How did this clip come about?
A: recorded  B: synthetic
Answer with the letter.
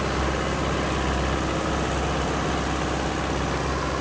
A